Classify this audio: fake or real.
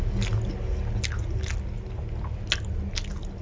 real